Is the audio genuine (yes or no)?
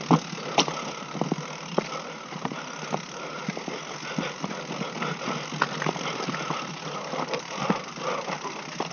yes